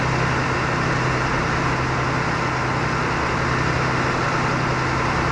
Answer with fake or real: real